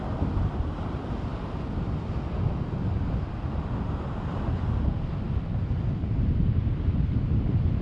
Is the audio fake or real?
real